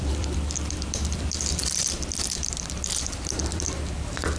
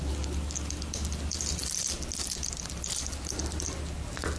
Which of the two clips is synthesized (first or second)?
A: first